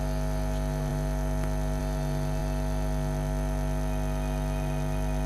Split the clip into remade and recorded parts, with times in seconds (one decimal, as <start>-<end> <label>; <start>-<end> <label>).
0.0-5.3 recorded